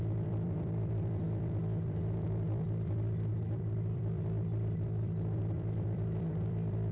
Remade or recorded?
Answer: remade